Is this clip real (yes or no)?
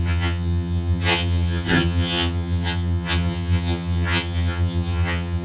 no